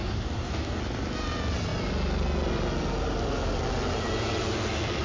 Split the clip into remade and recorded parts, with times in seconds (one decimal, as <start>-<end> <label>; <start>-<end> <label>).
0.0-0.8 remade; 0.8-5.0 recorded